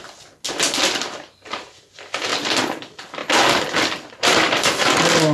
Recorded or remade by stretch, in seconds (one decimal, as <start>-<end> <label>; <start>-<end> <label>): 0.0-5.3 recorded